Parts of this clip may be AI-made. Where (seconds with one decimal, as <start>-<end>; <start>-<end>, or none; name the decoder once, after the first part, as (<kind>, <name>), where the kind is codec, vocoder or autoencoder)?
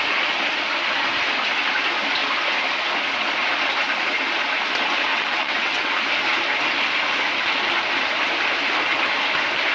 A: 5.1-5.9 (vocoder, WaveNeXt)